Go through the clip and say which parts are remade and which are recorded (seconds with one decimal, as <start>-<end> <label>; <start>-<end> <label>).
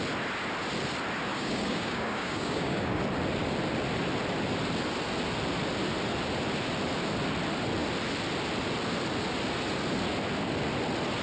0.0-1.3 recorded; 1.3-3.0 remade; 3.0-11.2 recorded